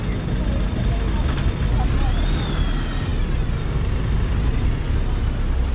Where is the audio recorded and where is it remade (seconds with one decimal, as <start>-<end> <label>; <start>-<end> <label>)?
0.0-5.7 recorded